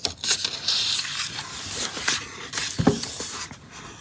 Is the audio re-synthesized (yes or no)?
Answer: no